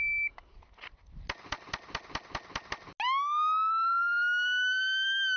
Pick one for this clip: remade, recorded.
recorded